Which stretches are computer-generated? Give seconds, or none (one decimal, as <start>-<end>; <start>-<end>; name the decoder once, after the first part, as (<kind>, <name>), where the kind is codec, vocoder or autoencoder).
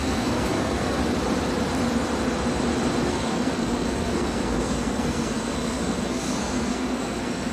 0.0-1.0 (codec, SNAC); 3.1-7.5